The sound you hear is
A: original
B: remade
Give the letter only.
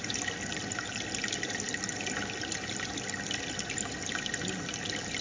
A